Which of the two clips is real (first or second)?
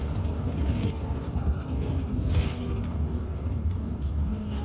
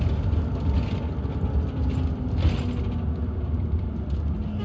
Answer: second